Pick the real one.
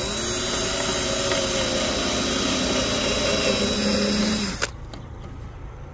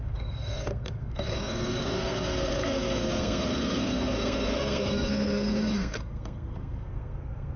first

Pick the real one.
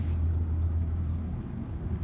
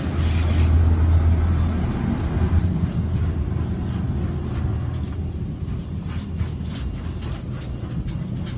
second